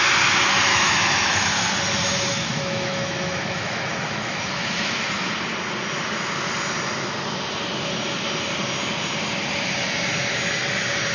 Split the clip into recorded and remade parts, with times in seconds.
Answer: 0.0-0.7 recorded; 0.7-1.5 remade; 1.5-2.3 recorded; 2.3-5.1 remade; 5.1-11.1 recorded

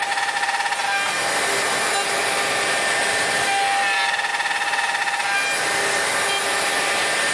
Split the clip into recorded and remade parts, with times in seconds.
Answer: 0.0-7.3 recorded

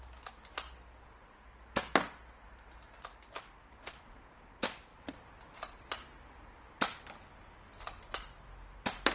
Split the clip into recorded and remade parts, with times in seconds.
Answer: 0.0-9.1 recorded

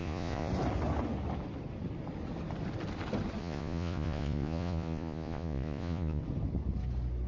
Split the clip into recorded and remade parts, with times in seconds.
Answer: 0.0-0.5 remade; 0.5-3.4 recorded; 3.4-6.2 remade; 6.2-7.3 recorded

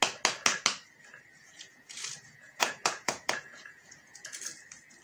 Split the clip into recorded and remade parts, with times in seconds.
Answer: 0.0-1.4 recorded; 1.4-4.4 remade; 4.4-5.0 recorded

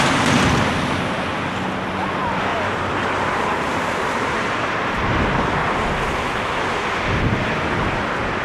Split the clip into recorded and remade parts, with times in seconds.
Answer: 0.0-2.5 recorded; 2.5-6.1 remade; 6.1-8.4 recorded